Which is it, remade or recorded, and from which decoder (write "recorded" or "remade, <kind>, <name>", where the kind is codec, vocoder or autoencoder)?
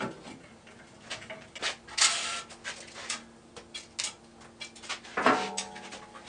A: recorded